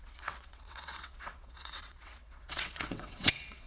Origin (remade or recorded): remade